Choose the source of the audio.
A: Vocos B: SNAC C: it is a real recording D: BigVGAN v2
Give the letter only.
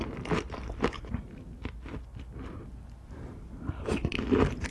C